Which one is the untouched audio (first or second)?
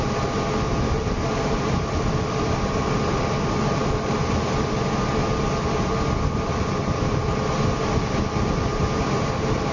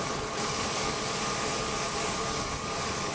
first